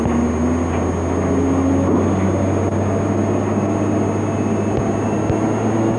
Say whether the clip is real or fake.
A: real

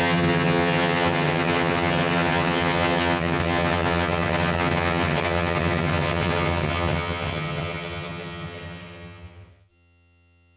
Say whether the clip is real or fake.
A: fake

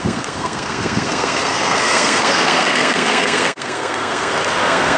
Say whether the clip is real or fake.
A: fake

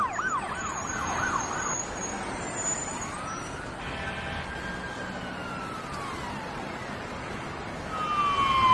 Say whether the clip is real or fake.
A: real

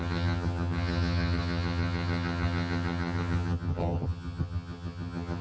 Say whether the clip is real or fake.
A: fake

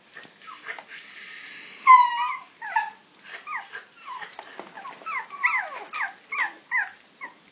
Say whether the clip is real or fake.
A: real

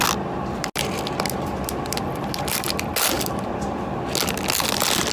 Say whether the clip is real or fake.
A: real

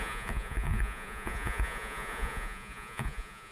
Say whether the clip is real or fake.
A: fake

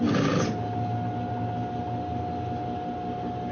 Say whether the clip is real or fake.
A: real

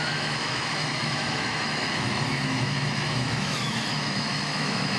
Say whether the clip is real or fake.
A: fake